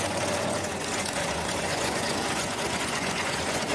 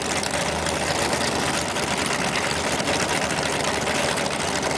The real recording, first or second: second